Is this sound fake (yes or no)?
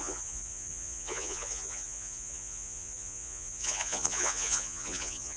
yes